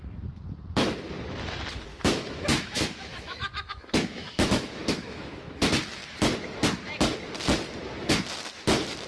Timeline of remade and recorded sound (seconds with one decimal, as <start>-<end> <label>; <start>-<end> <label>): 0.0-1.9 recorded; 1.9-5.6 remade; 5.6-9.1 recorded

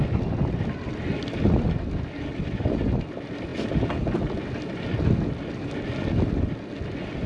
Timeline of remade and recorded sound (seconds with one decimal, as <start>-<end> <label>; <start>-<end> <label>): 0.0-7.3 recorded

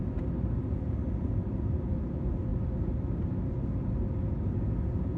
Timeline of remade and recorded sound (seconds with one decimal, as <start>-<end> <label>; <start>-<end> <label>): 0.0-5.2 recorded

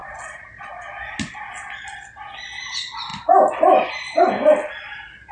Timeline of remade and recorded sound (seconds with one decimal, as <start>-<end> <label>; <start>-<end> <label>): 0.0-5.3 recorded